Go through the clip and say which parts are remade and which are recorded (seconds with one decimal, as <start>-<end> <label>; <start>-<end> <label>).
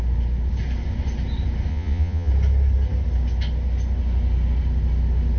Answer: 0.0-1.7 recorded; 1.7-2.3 remade; 2.3-5.4 recorded